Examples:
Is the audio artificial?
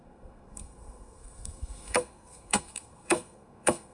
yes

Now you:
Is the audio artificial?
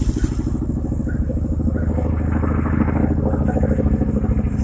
no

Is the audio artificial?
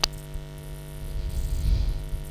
no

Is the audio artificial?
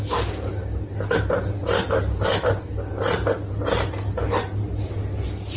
no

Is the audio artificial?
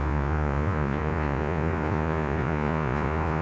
yes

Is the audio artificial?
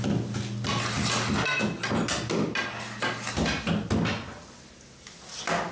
no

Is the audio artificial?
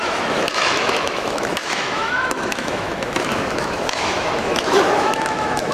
yes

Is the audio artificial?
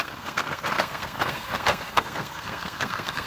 yes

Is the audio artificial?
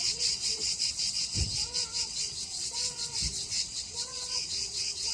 yes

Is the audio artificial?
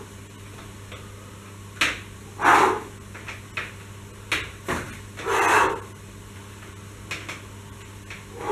no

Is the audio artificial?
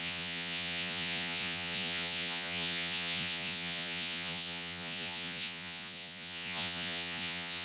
yes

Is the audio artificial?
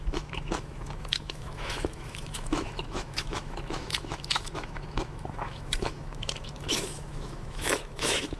yes